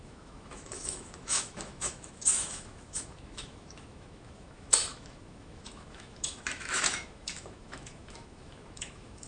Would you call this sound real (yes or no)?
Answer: no